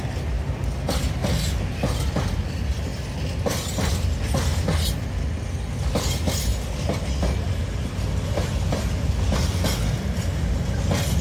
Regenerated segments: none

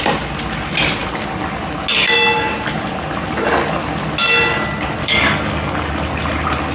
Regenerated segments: 5.0-5.9 (codec, DAC)

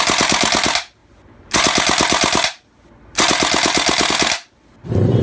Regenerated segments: none